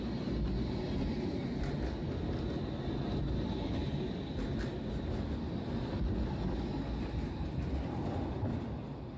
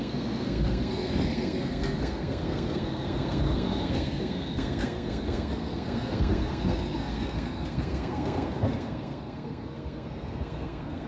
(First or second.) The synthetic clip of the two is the second